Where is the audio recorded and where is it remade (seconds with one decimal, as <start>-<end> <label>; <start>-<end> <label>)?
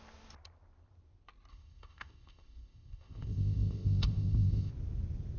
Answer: 0.0-1.5 recorded; 1.5-4.7 remade; 4.7-5.4 recorded